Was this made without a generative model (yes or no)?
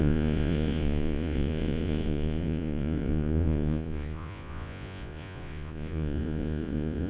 no